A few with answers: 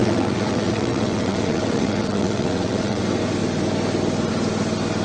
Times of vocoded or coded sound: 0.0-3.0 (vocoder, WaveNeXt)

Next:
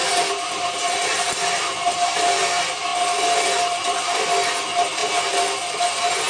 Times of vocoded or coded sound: none

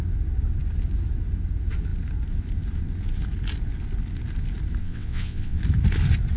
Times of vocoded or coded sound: 4.8-5.6 (vocoder, WaveNeXt)

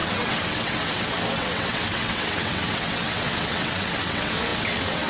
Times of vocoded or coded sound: 0.0-5.1 (vocoder, WaveNeXt)